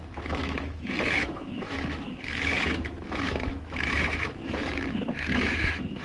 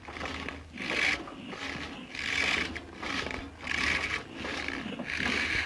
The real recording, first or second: second